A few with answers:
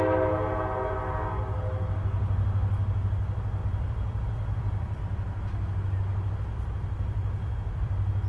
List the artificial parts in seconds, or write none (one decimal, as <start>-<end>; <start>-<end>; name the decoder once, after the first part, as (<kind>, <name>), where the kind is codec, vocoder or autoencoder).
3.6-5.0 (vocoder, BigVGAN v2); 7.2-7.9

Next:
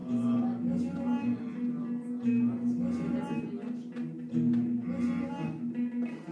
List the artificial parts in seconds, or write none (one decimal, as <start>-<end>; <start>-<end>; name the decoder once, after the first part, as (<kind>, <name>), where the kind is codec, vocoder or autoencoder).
none

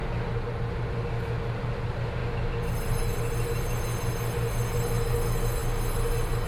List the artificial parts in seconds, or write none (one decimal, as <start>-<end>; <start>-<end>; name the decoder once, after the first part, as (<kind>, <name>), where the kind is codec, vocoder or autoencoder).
none